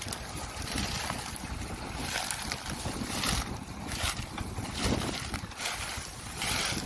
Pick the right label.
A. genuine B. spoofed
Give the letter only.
A